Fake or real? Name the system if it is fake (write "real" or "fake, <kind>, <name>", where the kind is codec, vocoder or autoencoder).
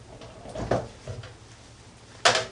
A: real